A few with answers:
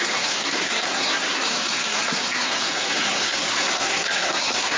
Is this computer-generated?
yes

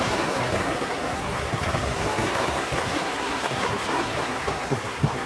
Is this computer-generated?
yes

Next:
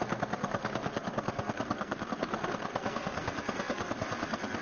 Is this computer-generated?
yes